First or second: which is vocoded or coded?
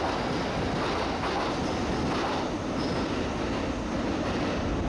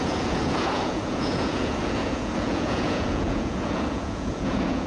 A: second